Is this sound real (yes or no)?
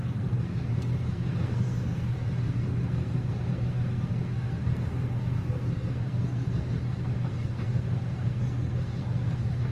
no